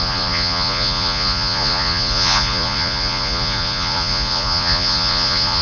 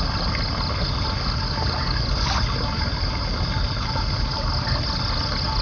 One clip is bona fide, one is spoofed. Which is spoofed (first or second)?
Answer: first